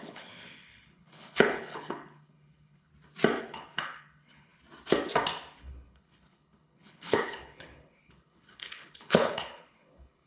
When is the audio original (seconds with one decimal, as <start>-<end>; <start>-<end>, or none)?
2.9-3.4; 4.5-5.6